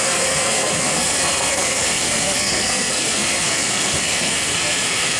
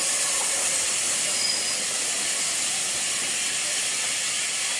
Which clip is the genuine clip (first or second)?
second